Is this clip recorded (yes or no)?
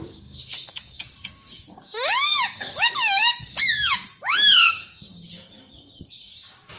no